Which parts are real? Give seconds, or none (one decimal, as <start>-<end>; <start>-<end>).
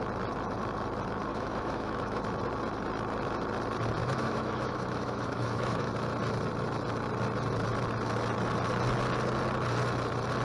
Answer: 0.0-1.3; 2.2-4.0; 5.9-10.4